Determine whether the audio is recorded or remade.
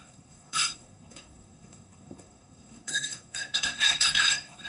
remade